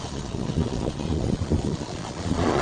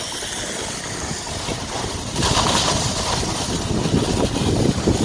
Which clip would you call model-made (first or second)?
first